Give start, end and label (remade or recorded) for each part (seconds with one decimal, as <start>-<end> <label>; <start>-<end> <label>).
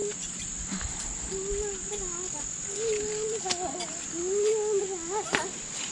0.0-5.9 recorded